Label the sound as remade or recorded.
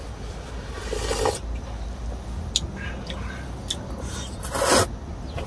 recorded